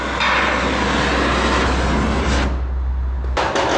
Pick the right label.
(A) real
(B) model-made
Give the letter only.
A